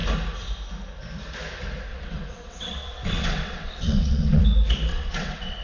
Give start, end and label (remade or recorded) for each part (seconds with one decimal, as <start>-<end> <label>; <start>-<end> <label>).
0.0-1.9 recorded; 1.9-4.4 remade; 4.4-4.9 recorded; 4.9-5.6 remade